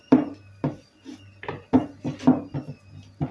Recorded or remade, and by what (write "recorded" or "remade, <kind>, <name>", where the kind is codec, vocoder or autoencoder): recorded